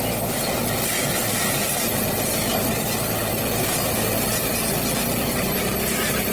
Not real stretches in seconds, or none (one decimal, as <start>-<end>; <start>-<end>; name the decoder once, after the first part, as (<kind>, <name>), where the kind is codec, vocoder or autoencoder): none